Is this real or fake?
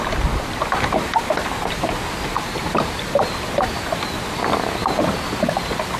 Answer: real